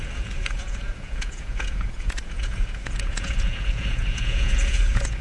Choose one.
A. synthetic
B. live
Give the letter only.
A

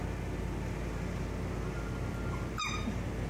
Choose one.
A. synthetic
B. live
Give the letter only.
B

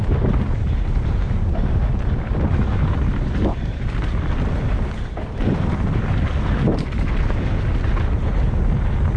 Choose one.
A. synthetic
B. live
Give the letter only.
B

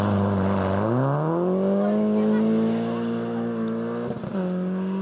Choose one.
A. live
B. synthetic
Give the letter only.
A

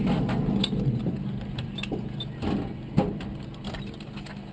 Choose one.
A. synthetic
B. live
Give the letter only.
B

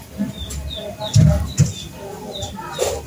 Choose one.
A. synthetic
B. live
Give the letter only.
B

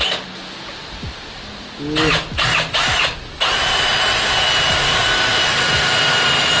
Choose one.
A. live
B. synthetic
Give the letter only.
A